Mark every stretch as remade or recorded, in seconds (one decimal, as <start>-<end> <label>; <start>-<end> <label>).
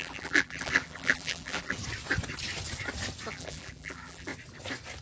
0.0-1.8 remade; 1.8-3.3 recorded; 3.3-4.3 remade; 4.3-5.0 recorded